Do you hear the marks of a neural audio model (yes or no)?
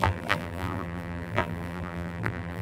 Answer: yes